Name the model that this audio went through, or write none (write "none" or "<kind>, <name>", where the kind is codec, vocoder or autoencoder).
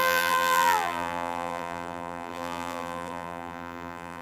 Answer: vocoder, BigVGAN v2